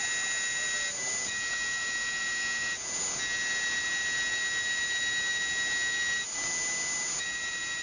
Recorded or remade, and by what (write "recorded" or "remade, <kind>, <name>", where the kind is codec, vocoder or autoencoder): recorded